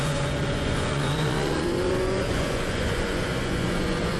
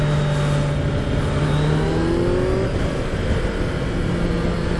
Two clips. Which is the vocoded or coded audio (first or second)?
first